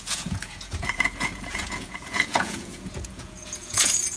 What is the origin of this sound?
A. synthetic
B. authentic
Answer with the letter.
A